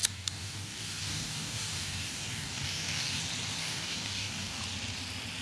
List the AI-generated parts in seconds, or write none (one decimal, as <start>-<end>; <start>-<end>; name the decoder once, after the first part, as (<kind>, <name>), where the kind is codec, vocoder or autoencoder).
0.0-3.2 (codec, DAC); 3.6-4.6